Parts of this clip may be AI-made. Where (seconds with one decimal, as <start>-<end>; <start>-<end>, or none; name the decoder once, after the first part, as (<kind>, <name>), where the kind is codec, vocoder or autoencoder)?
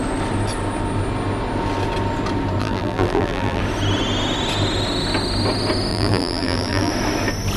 2.6-3.6 (vocoder, BigVGAN v2); 5.9-6.9